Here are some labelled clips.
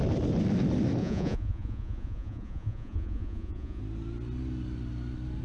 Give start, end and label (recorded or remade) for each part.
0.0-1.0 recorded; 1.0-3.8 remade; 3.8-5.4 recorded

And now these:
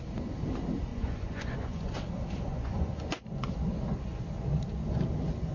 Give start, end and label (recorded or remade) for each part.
0.0-0.9 recorded; 0.9-2.0 remade; 2.0-2.5 recorded; 2.5-3.5 remade; 3.5-5.5 recorded